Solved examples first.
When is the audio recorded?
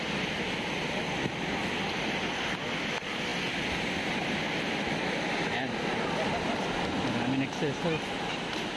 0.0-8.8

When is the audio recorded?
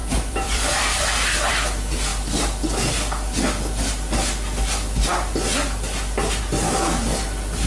1.5-7.7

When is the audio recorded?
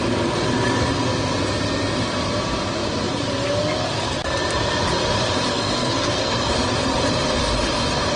0.0-5.5; 6.5-8.2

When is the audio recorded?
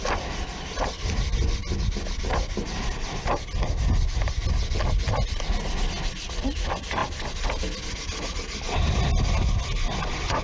0.0-10.4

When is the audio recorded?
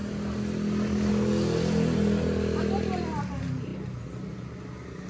0.0-5.1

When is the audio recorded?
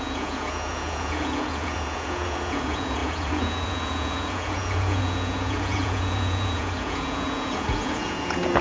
none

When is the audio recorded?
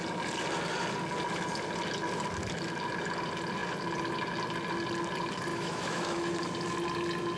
0.0-5.5; 6.3-7.4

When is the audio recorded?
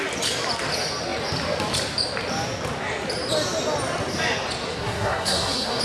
0.0-4.7